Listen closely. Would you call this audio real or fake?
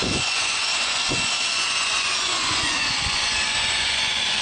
fake